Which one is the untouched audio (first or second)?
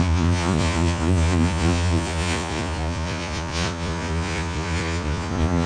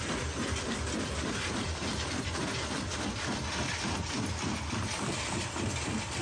second